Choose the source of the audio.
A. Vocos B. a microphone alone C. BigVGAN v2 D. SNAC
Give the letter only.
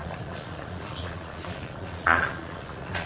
A